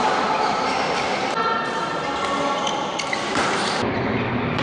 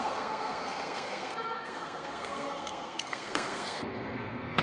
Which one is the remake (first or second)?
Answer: second